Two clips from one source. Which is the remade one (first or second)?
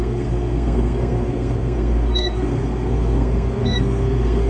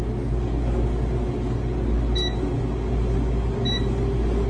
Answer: first